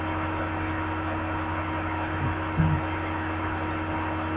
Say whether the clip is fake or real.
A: real